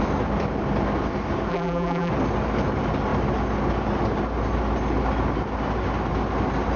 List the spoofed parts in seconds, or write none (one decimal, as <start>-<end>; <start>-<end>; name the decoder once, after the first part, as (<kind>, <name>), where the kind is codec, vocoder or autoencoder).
1.5-2.1 (vocoder, BigVGAN v2)